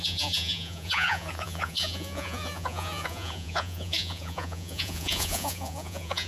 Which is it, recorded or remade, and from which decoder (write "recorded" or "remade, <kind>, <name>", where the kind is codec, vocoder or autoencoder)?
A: remade, vocoder, Vocos